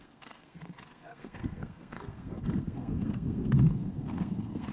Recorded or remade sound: remade